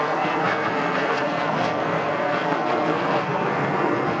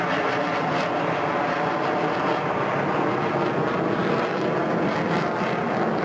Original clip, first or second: second